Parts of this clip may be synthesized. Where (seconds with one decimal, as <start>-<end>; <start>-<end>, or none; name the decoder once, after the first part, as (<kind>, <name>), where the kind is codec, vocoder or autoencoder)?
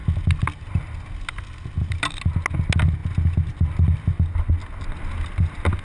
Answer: none